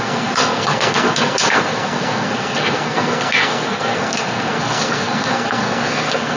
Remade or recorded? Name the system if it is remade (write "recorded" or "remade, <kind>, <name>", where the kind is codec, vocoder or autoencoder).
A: remade, codec, SNAC